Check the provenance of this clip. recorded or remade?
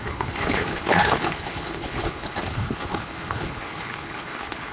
remade